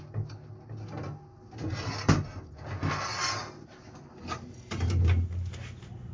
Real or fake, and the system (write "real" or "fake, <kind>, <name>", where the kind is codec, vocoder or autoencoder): real